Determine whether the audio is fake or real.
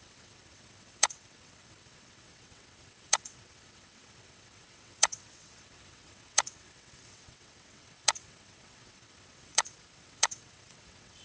fake